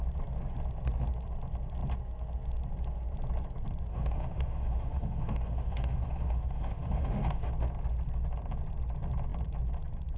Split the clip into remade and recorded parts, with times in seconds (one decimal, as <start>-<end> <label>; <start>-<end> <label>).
0.0-3.9 recorded; 3.9-7.5 remade; 7.5-10.2 recorded